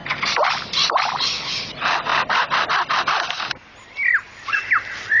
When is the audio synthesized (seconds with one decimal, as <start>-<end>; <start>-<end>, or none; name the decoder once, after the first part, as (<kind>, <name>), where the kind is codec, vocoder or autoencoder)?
none